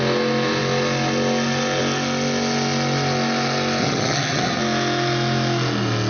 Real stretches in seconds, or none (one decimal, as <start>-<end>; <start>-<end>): 0.0-3.8; 4.6-6.1